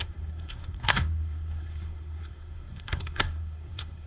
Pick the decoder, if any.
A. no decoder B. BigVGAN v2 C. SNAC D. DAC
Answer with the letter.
C